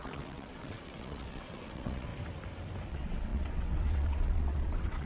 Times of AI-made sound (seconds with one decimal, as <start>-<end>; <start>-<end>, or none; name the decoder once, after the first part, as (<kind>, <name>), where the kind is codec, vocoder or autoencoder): 0.0-2.1 (vocoder, WaveNeXt); 2.9-5.1